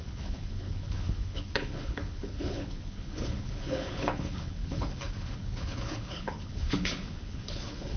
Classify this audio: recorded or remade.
remade